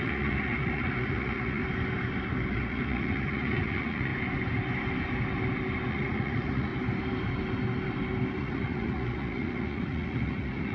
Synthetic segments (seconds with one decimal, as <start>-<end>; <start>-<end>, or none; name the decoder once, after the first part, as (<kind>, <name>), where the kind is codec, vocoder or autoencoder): 0.0-1.6 (vocoder, Vocos); 2.5-4.1; 5.9-6.7; 8.4-10.7